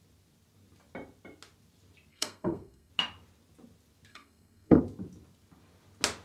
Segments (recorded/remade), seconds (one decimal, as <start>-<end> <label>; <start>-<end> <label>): 0.0-2.1 recorded; 2.1-2.9 remade; 2.9-4.1 recorded; 4.1-4.8 remade; 4.8-6.2 recorded